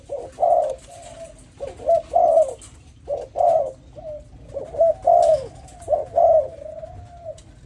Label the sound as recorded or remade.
recorded